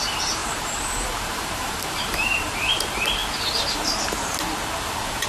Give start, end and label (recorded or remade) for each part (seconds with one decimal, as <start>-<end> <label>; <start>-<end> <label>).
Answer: 0.0-3.2 remade; 3.2-3.7 recorded; 3.7-4.3 remade; 4.3-4.8 recorded; 4.8-5.3 remade